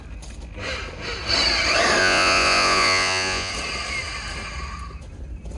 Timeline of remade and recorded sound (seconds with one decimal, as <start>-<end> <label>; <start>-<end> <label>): 0.0-2.0 recorded; 2.0-3.5 remade; 3.5-5.6 recorded